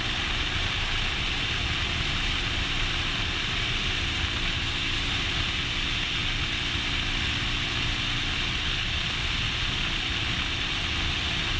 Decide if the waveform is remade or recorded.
recorded